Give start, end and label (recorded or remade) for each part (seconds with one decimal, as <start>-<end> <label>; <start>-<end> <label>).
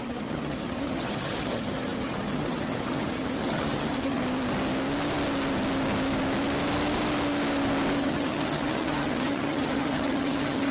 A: 0.0-4.2 remade; 4.2-8.0 recorded; 8.0-10.7 remade